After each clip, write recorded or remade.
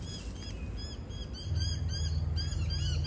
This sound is recorded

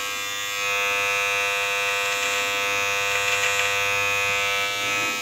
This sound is recorded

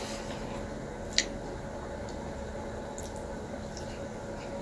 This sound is recorded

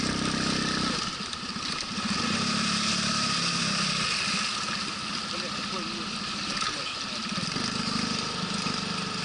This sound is recorded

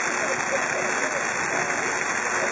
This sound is recorded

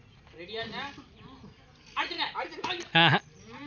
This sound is recorded